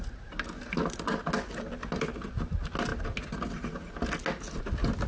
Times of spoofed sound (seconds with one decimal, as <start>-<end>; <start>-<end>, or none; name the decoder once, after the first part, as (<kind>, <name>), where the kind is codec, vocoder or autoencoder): none